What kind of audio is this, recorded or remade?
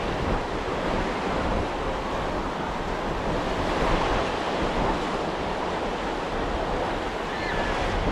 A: recorded